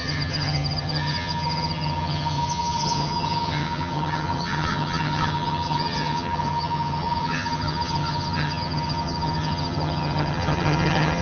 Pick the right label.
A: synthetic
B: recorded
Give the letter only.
A